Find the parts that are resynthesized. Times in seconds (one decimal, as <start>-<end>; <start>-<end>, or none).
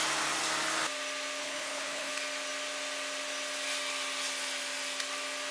1.4-2.1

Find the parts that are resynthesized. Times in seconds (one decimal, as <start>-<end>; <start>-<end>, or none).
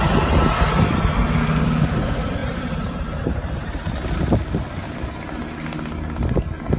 2.4-3.9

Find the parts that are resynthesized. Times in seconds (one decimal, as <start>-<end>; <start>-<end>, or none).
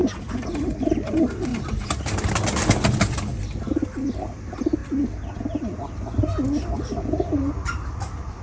0.0-0.5; 1.5-2.3